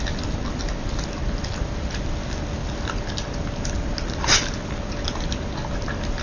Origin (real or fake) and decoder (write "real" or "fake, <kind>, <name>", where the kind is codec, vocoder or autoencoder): real